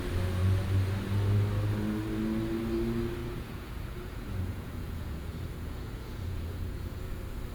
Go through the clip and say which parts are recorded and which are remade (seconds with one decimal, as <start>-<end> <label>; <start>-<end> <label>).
0.0-3.2 recorded; 3.2-7.0 remade; 7.0-7.5 recorded